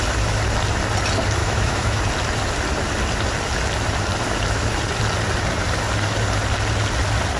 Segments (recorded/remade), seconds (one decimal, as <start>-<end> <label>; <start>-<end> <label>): 0.0-1.4 recorded; 1.4-2.0 remade; 2.0-7.4 recorded